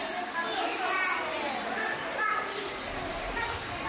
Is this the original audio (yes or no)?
yes